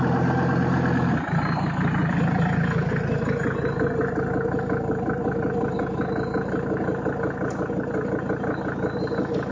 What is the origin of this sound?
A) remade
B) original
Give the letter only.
B